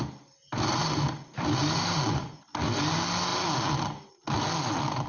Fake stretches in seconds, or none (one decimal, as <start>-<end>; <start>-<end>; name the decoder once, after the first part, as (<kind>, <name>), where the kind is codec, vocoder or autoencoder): none